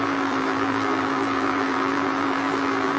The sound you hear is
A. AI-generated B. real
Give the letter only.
A